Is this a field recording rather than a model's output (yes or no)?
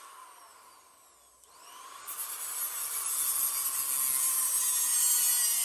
yes